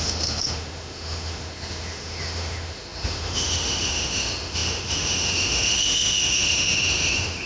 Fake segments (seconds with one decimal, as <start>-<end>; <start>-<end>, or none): 0.0-7.5